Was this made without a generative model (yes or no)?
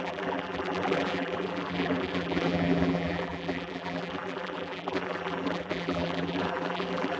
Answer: no